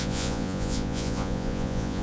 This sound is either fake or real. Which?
fake